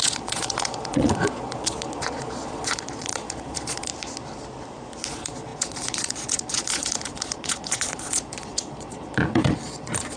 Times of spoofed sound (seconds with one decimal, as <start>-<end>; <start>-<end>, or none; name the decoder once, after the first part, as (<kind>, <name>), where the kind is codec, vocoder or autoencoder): 0.0-3.9 (vocoder, Vocos); 5.1-10.2